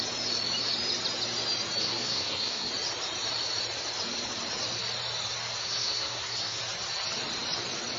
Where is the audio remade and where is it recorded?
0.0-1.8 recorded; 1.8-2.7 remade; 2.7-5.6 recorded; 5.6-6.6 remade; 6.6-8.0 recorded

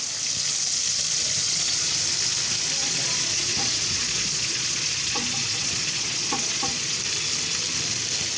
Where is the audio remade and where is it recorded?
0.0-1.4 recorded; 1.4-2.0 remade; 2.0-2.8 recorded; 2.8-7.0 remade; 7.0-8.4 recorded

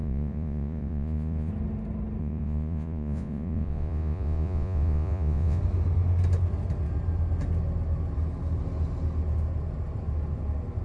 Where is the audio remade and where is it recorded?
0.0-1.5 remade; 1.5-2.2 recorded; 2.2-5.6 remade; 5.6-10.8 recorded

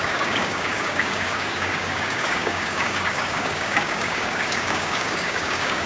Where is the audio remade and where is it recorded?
0.0-5.9 remade